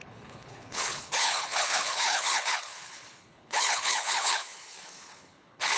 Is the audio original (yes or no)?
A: no